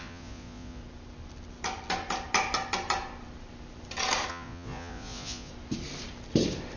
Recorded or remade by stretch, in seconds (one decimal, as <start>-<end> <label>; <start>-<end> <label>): 0.0-0.8 remade; 0.8-4.3 recorded; 4.3-5.5 remade; 5.5-6.8 recorded